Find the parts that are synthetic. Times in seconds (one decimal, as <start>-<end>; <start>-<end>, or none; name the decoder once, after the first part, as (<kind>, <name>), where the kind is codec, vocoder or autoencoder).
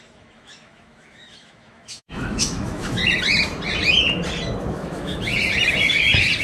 0.0-3.0 (autoencoder, DAC-VAE); 4.7-5.3